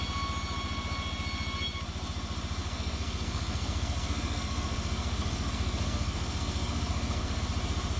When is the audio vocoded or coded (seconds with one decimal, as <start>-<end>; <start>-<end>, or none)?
2.6-7.4